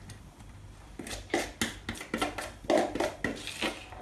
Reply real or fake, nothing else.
real